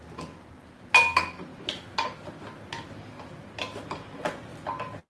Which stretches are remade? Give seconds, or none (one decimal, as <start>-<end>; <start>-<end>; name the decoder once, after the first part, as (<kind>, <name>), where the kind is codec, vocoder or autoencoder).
none